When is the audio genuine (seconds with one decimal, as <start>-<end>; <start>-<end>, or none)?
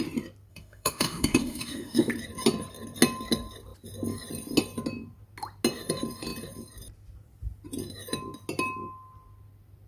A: 0.0-0.5; 2.1-9.9